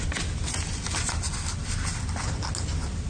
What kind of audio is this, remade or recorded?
recorded